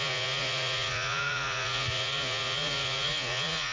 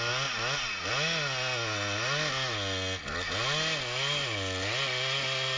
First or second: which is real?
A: second